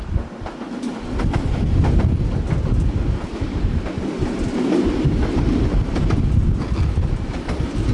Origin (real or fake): real